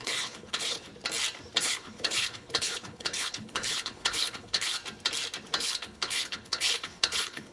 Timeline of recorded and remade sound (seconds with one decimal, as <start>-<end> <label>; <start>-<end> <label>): 0.0-0.9 remade; 0.9-1.6 recorded; 1.6-4.8 remade; 4.8-5.6 recorded; 5.6-7.5 remade